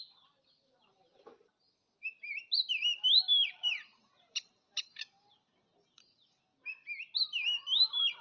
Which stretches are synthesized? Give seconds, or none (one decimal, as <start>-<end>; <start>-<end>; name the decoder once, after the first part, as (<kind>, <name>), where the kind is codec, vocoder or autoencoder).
3.4-5.5 (vocoder, BigVGAN v2)